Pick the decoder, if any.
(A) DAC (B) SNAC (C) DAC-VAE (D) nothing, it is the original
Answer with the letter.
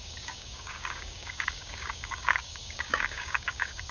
A